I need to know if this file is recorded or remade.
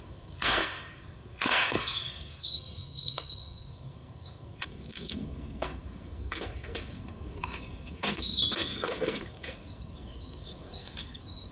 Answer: remade